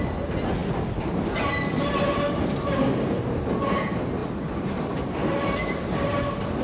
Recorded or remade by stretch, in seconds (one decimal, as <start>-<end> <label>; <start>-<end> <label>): 0.0-6.6 recorded

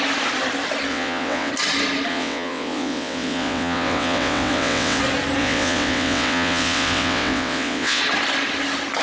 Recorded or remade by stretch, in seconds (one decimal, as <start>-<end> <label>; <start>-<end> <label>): 0.0-0.9 recorded; 0.9-1.5 remade; 1.5-2.1 recorded; 2.1-5.0 remade; 5.0-5.4 recorded; 5.4-8.0 remade; 8.0-9.0 recorded

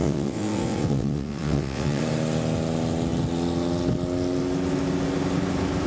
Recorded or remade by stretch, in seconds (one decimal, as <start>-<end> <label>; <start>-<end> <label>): 0.0-2.0 remade; 2.0-5.9 recorded

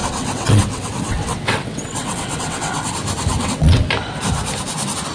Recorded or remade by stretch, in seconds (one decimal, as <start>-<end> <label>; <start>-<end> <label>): 0.0-2.9 remade; 2.9-3.3 recorded; 3.3-3.9 remade; 3.9-5.1 recorded

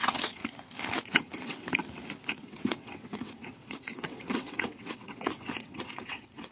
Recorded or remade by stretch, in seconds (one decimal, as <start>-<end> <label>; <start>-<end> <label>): 0.0-0.4 remade; 0.4-1.0 recorded; 1.0-1.8 remade; 1.8-2.4 recorded; 2.4-6.5 remade

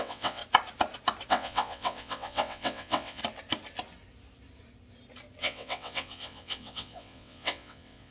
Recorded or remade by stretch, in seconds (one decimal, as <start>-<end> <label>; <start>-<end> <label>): 0.0-0.4 remade; 0.4-1.3 recorded; 1.3-3.2 remade; 3.2-5.4 recorded; 5.4-8.1 remade